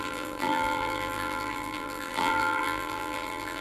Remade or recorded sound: remade